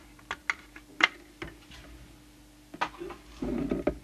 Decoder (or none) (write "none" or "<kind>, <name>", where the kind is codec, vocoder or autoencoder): none